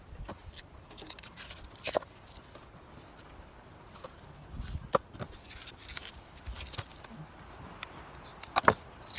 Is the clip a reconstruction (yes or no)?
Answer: no